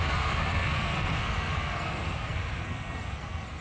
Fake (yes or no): yes